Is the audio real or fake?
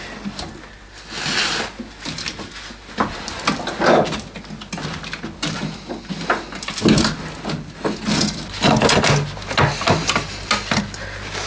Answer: real